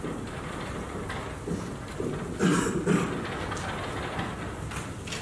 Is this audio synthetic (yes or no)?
no